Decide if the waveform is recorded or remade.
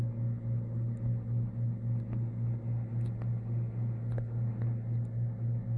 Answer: recorded